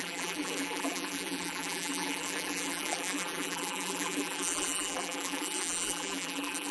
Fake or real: fake